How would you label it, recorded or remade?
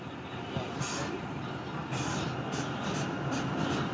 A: recorded